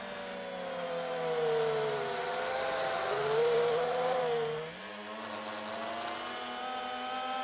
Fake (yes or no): no